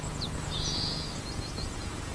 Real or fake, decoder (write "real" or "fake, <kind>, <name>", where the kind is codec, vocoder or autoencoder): fake, vocoder, Vocos